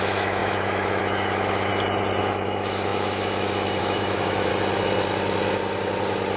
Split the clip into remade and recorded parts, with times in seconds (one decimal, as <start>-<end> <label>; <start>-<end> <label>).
0.0-1.7 remade; 1.7-2.2 recorded; 2.2-4.5 remade; 4.5-6.4 recorded